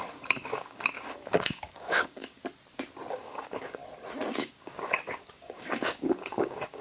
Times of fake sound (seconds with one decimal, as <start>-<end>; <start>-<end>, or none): 0.0-2.4; 3.1-3.8; 4.3-6.8